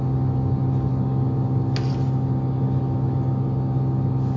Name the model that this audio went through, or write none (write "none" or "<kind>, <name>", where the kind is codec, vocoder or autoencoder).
none